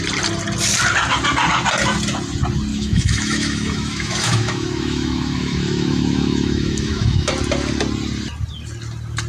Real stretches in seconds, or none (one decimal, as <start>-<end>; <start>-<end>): 0.0-2.7; 7.3-9.3